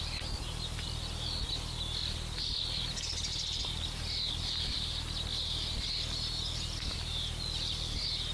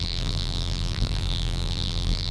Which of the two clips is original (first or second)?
first